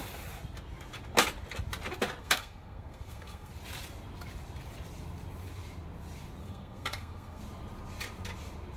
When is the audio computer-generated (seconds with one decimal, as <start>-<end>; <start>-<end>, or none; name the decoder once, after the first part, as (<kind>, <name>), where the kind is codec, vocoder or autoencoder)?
2.2-3.5 (codec, SNAC); 6.4-7.4